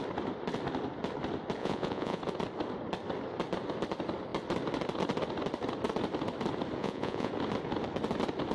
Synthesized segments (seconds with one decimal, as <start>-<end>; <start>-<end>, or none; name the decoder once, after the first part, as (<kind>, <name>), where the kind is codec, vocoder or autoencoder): 1.6-2.2 (vocoder, Vocos); 6.8-7.3